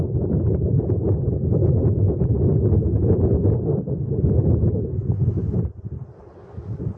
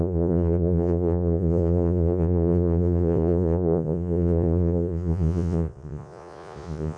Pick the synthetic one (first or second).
second